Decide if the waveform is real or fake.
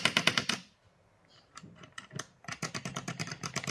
real